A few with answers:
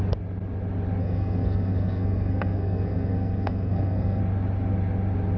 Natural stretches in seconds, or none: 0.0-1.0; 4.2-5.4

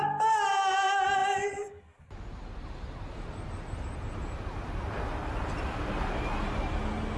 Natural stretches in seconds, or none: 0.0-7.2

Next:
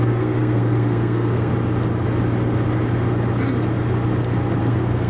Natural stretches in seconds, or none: 1.5-4.6